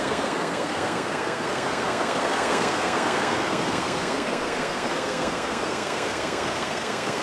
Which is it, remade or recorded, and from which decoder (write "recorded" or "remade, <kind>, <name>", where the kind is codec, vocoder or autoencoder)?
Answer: remade, codec, SNAC